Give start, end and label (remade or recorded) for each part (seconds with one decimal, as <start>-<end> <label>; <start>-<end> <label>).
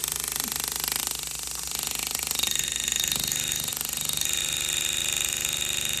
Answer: 0.0-2.0 recorded; 2.0-2.6 remade; 2.6-6.0 recorded